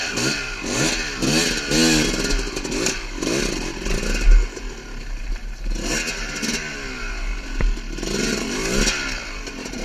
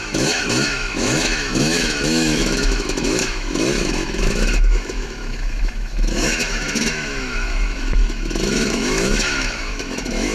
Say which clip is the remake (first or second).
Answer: second